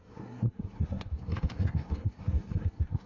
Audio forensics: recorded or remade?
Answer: remade